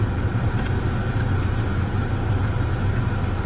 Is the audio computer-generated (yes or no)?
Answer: no